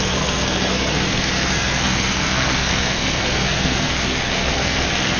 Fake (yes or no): yes